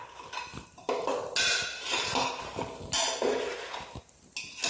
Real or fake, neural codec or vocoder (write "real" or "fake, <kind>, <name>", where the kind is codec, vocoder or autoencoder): real